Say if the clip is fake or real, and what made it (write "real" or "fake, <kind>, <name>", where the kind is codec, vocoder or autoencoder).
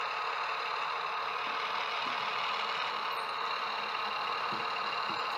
real